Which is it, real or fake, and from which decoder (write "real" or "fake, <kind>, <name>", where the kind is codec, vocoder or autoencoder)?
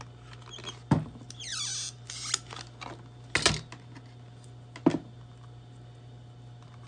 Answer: real